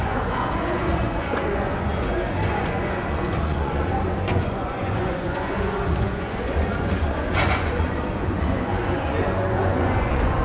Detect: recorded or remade remade